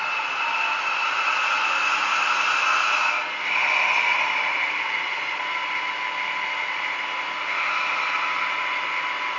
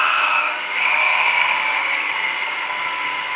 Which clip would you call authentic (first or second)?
first